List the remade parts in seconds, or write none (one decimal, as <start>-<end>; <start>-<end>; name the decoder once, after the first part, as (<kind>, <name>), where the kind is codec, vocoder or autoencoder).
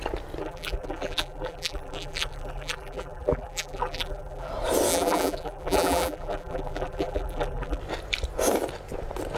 0.4-4.5 (vocoder, BigVGAN v2); 4.9-7.8